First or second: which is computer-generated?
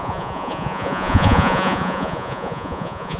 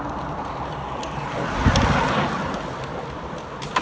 first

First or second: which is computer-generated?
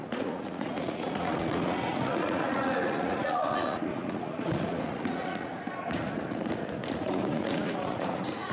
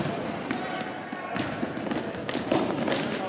first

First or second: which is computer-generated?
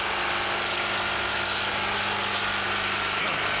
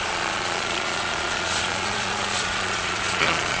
second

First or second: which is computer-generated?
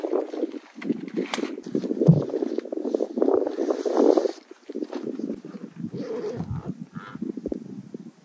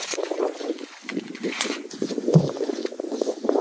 second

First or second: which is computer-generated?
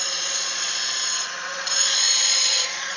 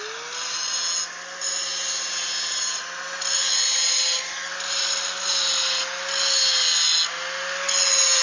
first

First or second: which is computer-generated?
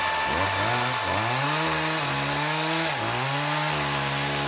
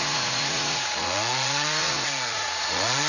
second